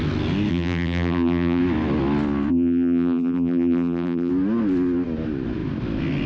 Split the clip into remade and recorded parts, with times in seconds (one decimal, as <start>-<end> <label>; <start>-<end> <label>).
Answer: 0.0-0.5 recorded; 0.5-1.6 remade; 1.6-2.5 recorded; 2.5-4.3 remade; 4.3-6.3 recorded